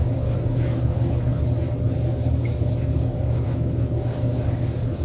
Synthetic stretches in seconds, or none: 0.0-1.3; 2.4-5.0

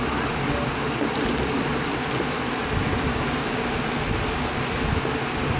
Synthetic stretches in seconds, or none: 3.1-3.7

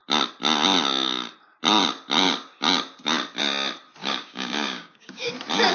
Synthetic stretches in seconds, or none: 4.0-5.3

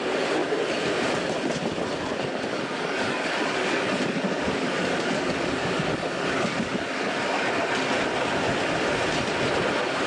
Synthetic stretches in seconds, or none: 2.5-7.6

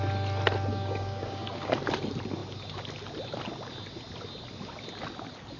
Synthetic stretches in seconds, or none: 0.7-1.7

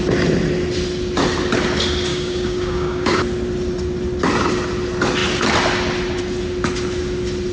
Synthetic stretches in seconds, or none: 2.1-3.2

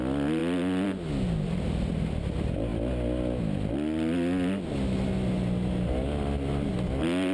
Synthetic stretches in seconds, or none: none